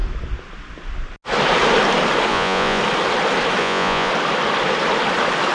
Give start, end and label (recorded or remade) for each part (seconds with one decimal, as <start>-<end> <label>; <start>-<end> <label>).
0.0-2.3 recorded; 2.3-2.8 remade; 2.8-3.6 recorded; 3.6-4.1 remade; 4.1-5.5 recorded